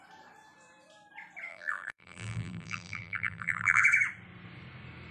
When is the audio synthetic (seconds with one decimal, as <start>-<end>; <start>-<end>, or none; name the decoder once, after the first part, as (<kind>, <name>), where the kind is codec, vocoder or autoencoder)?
1.5-3.8 (vocoder, BigVGAN v2)